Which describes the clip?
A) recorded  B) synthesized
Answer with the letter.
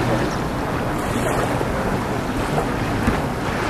A